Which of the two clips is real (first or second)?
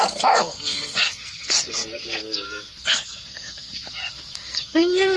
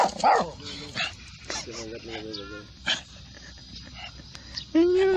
second